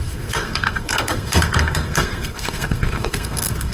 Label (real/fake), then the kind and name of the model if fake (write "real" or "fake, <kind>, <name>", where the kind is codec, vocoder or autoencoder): fake, codec, SNAC